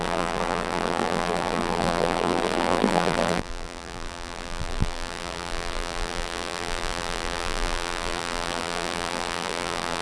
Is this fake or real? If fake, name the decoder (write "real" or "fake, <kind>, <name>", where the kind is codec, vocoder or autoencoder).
fake, vocoder, BigVGAN v2